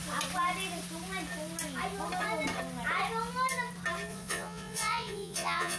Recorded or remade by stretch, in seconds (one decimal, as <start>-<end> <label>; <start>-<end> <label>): 0.0-4.1 recorded; 4.1-5.8 remade